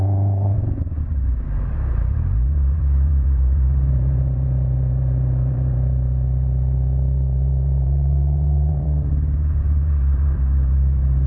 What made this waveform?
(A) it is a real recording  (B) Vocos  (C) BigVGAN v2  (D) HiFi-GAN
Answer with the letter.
C